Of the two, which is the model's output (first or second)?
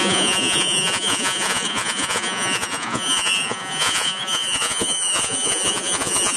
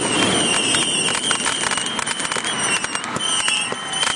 first